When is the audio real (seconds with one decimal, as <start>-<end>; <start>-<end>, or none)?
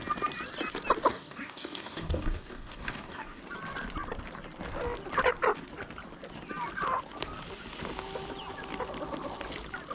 0.0-1.1; 3.4-9.9